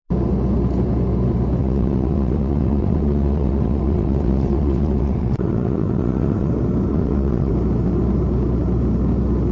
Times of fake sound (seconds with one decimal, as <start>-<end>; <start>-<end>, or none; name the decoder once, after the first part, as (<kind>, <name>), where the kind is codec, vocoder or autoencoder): 1.6-6.5 (vocoder, WaveNeXt); 6.9-7.5